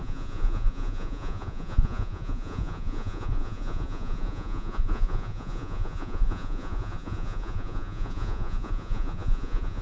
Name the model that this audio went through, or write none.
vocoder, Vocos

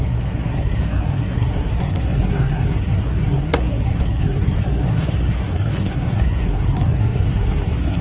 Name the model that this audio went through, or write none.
codec, SNAC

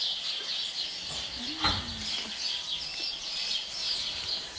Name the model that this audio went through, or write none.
none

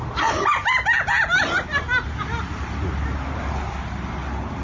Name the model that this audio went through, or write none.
none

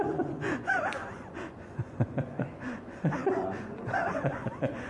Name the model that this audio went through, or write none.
vocoder, Vocos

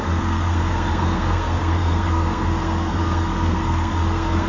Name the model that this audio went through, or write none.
codec, SNAC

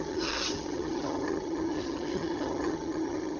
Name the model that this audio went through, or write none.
vocoder, HiFi-GAN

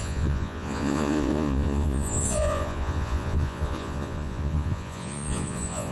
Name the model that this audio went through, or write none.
vocoder, Vocos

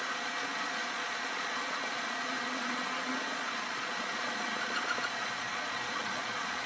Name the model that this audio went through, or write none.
vocoder, Vocos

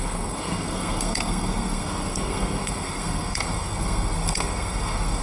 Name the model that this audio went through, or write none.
codec, SNAC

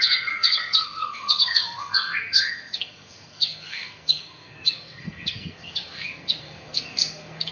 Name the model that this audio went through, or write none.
codec, SNAC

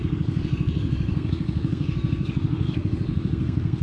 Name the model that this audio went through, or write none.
codec, SNAC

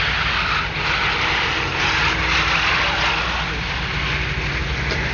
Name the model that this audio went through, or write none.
none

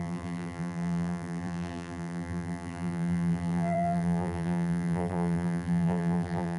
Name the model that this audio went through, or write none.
vocoder, BigVGAN v2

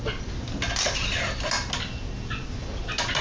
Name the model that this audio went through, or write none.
none